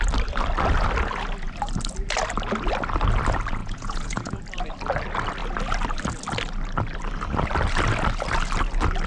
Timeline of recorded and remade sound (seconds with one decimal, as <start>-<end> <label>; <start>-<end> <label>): 0.0-3.6 recorded; 3.6-4.4 remade; 4.4-9.1 recorded